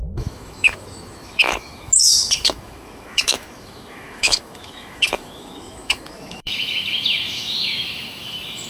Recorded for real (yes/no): no